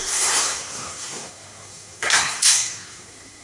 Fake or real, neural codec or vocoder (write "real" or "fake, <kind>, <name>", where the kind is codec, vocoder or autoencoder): fake, codec, SNAC